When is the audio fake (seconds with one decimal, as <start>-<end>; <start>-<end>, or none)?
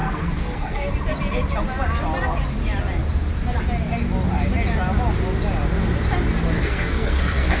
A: 0.0-0.9; 6.6-7.6